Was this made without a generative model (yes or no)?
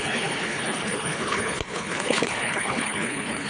no